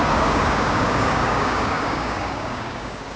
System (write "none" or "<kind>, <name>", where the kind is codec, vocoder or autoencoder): codec, DAC